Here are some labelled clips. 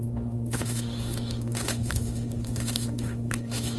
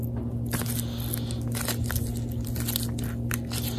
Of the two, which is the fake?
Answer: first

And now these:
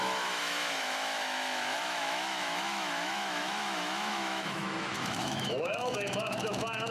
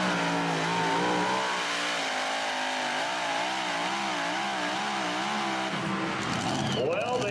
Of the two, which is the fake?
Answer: first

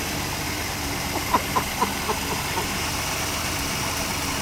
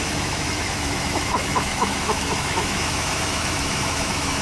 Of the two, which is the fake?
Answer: second